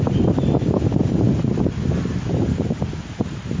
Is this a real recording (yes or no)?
yes